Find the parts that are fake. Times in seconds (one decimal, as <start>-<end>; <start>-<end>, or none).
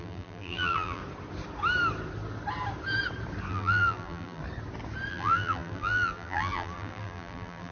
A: 0.0-1.0; 3.5-4.4; 5.1-7.7